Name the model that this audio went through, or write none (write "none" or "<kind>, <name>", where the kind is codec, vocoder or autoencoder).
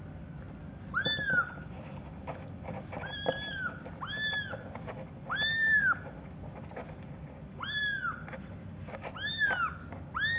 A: none